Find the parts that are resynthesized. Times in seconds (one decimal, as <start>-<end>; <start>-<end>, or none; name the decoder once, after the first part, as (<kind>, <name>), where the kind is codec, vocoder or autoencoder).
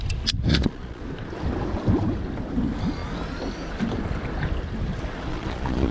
0.5-1.0 (vocoder, Vocos); 5.3-5.9